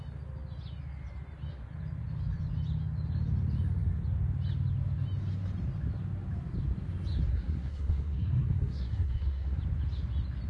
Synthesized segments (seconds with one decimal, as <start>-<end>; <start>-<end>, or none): 7.3-9.6